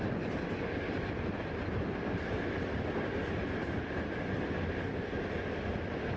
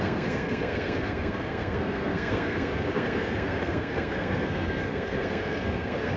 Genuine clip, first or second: first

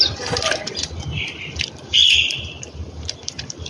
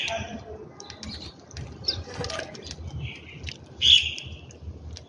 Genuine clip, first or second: second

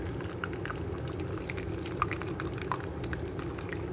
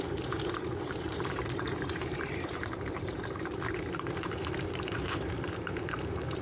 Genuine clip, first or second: first